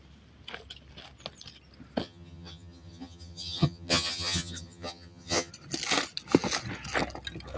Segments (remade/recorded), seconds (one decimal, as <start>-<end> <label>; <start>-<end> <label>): 0.0-2.0 recorded; 2.0-5.5 remade; 5.5-7.6 recorded